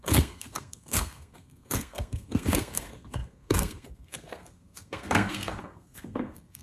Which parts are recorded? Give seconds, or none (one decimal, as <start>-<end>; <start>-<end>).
none